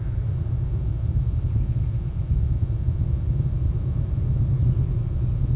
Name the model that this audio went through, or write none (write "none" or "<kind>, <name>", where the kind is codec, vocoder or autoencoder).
none